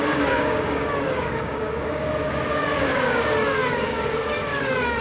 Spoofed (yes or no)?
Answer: yes